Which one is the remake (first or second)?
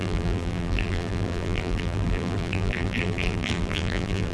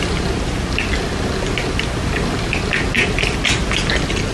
first